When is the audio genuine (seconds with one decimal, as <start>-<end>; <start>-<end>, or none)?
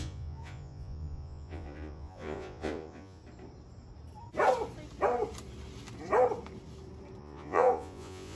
3.2-7.2